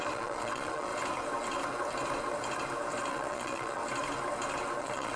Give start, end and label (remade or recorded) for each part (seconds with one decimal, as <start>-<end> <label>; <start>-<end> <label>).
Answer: 0.0-0.9 remade; 0.9-3.1 recorded; 3.1-3.8 remade; 3.8-4.8 recorded; 4.8-5.2 remade